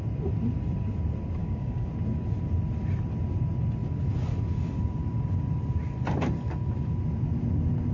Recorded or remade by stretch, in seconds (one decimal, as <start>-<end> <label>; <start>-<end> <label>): 0.0-1.4 recorded; 1.4-1.9 remade; 1.9-7.9 recorded